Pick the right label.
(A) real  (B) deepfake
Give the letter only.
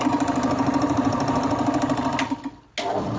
A